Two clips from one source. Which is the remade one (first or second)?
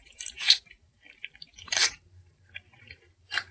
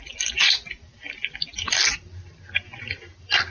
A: first